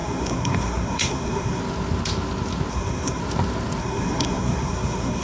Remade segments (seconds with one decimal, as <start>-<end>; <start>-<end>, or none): 0.0-1.6; 2.7-3.2; 3.8-5.2